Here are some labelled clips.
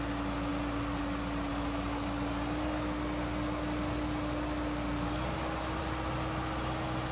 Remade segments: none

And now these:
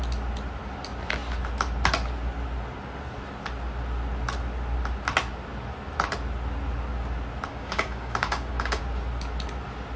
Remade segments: 7.5-8.8 (codec, DAC)

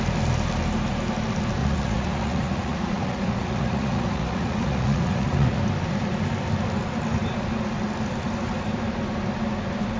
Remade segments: 1.6-5.6 (vocoder, Vocos)

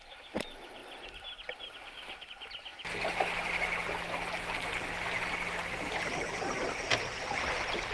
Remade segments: none